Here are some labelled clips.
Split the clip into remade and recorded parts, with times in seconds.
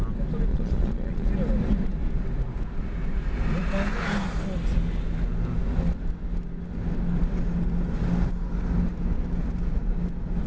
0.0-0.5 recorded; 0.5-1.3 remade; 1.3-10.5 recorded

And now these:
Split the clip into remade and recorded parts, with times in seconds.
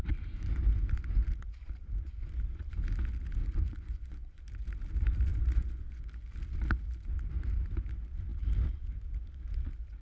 0.0-3.4 recorded; 3.4-4.4 remade; 4.4-5.3 recorded; 5.3-6.0 remade; 6.0-10.0 recorded